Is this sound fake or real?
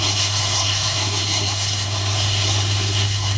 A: fake